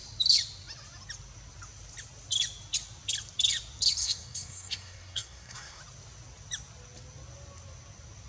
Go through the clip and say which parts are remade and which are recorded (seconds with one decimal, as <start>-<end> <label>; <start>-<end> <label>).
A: 0.0-4.0 recorded; 4.0-5.8 remade; 5.8-8.3 recorded